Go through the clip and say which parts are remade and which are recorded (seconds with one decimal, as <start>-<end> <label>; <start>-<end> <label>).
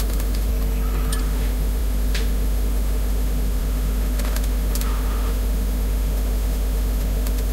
0.0-0.5 remade; 0.5-1.2 recorded; 1.2-7.5 remade